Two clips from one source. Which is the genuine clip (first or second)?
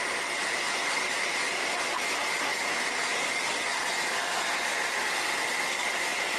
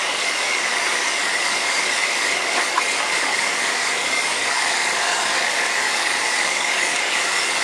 first